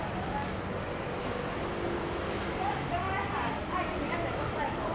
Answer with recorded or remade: recorded